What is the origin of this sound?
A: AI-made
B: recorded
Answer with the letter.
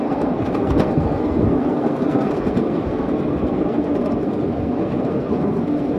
A